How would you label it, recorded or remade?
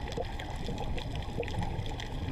recorded